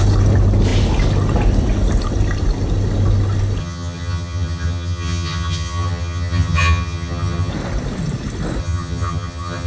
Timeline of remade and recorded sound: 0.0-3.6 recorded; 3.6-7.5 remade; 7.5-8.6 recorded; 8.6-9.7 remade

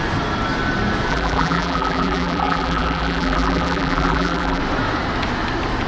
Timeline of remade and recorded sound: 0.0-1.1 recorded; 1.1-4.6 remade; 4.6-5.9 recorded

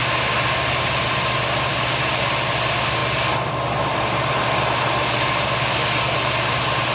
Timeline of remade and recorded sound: 0.0-6.9 recorded

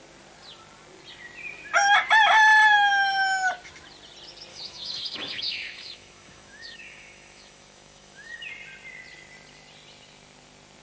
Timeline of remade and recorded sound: 0.0-4.5 recorded; 4.5-8.5 remade; 8.5-10.8 recorded

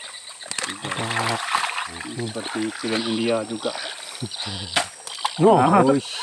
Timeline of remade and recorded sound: 0.0-6.2 recorded